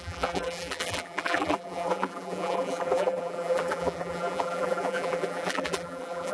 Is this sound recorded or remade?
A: remade